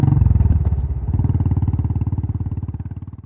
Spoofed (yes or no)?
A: no